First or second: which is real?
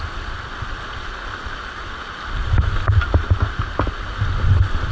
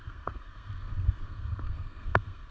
first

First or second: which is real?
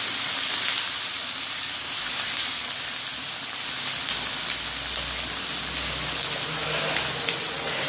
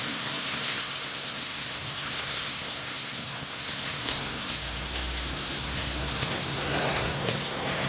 first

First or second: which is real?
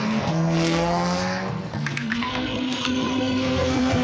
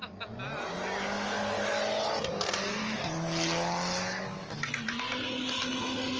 second